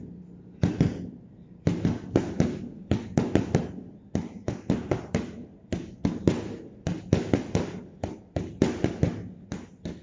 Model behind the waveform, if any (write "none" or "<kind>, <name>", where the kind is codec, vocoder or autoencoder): none